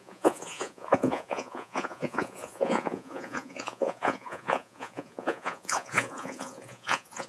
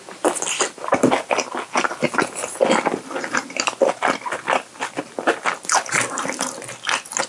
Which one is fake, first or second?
first